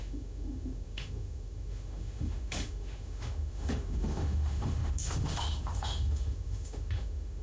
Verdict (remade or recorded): remade